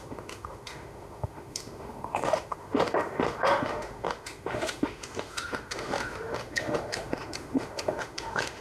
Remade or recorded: remade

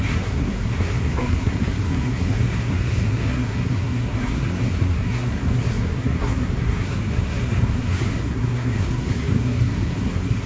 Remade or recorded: remade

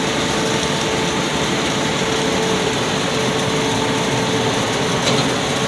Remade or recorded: recorded